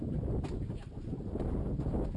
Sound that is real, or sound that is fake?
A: real